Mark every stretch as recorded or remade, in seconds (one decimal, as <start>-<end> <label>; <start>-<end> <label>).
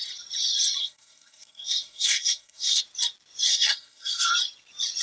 0.0-0.8 recorded; 0.8-2.8 remade; 2.8-3.5 recorded; 3.5-4.3 remade; 4.3-5.0 recorded